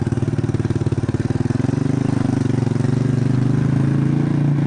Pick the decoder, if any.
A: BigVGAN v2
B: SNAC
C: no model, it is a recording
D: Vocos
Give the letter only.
C